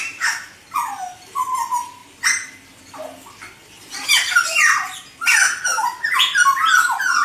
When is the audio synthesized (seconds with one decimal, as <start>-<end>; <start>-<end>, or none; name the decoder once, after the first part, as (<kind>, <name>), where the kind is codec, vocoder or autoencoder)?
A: none